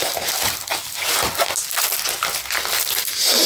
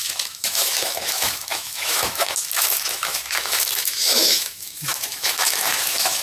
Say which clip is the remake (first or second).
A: second